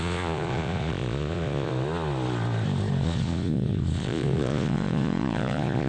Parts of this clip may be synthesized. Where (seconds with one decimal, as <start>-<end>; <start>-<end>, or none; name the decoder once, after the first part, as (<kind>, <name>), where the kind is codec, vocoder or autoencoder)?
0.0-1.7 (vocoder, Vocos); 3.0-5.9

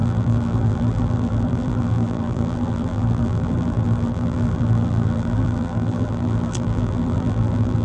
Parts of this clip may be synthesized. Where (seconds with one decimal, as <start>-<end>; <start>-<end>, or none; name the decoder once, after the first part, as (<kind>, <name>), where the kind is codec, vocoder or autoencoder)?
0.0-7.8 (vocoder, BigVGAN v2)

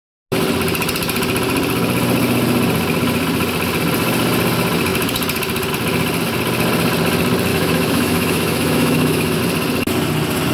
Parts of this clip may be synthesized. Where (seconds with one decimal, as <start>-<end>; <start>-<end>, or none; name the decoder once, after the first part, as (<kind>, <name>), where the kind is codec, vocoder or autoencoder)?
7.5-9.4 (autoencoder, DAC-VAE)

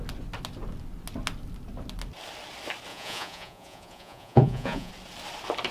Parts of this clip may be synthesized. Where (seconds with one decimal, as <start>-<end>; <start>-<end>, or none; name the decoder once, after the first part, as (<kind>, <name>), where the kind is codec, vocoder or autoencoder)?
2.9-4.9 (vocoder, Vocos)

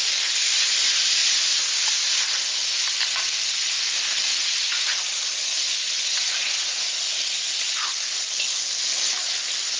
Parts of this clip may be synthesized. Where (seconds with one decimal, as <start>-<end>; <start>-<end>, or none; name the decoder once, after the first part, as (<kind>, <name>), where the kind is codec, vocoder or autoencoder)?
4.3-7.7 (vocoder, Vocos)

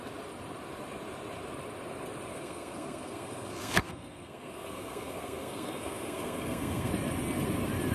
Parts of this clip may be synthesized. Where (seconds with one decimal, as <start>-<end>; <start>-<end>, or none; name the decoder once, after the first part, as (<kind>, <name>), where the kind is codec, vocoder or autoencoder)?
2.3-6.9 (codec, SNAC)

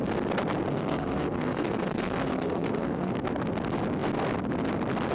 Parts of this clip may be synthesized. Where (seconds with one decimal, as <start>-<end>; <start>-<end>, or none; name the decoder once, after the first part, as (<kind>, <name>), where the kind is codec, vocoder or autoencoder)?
0.7-3.1 (codec, SNAC)